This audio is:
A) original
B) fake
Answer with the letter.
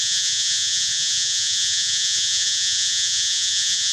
B